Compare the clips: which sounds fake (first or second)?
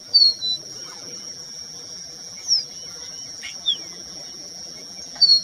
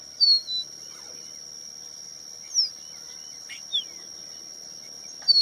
first